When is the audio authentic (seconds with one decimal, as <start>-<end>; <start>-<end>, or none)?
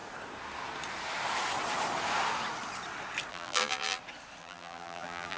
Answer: 0.0-3.3; 4.0-4.4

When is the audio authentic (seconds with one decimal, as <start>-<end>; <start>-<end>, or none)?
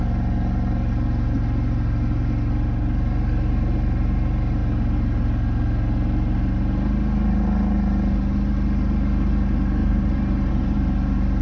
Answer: 0.0-9.8; 10.9-11.4